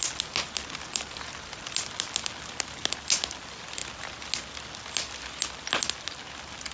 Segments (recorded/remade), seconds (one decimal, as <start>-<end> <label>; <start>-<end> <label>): 0.0-6.7 recorded